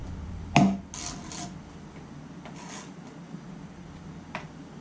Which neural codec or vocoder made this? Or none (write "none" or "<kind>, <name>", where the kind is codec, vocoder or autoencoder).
none